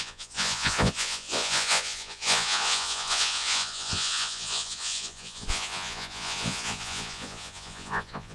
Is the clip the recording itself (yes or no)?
no